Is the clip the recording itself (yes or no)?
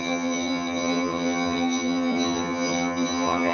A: no